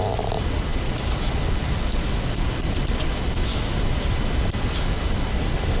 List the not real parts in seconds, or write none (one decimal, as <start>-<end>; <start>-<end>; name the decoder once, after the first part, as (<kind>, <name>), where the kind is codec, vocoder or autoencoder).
none

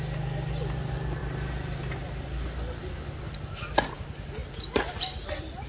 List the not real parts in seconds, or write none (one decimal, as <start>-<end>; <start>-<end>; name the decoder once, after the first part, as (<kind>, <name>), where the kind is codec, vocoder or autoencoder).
none